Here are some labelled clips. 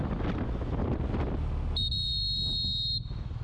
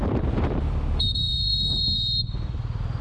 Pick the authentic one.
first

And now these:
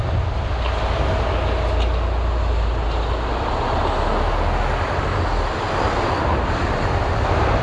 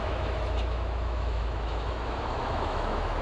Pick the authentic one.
first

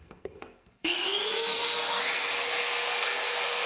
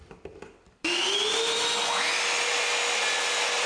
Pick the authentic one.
second